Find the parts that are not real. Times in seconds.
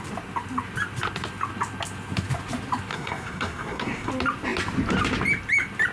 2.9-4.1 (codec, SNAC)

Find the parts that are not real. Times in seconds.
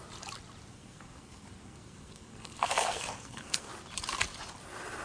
0.7-3.7 (codec, SNAC)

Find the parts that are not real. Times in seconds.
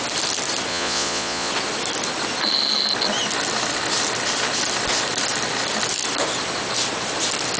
0.7-1.5 (vocoder, Vocos)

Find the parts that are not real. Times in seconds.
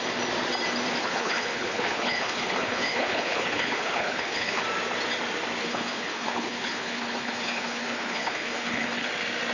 1.0-4.6 (codec, HILCodec); 5.6-9.1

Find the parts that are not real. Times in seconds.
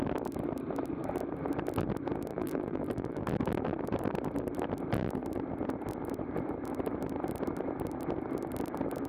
2.3-3.2 (vocoder, BigVGAN v2)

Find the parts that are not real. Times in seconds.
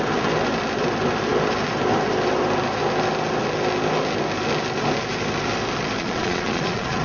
6.0-7.0 (vocoder, Vocos)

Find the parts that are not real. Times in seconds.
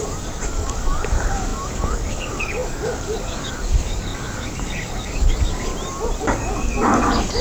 0.0-5.7 (codec, DAC); 6.2-7.4